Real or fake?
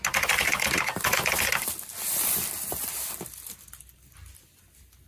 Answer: real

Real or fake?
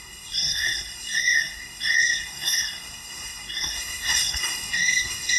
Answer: fake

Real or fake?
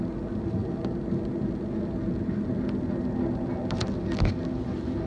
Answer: real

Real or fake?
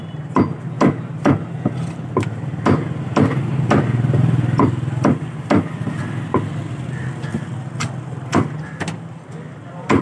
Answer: real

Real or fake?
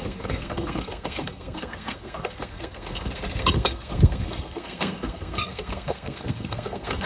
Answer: fake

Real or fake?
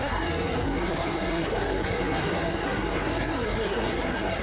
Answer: fake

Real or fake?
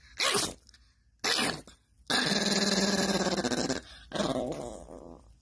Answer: real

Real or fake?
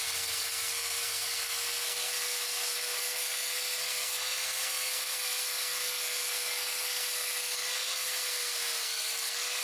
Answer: fake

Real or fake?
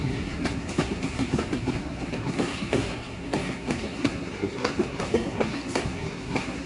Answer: fake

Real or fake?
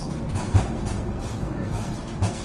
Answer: fake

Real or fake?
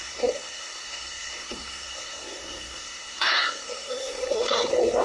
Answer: fake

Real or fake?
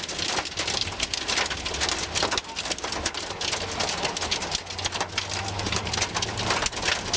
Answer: real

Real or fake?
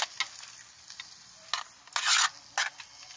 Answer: real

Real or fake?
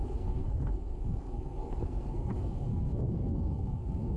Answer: fake